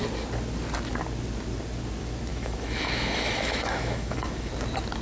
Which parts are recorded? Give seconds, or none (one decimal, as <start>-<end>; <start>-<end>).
0.0-2.3; 4.5-5.0